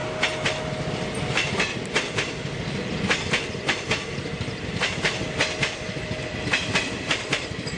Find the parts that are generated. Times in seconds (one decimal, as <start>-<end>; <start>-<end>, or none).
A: 0.9-4.2; 4.8-7.8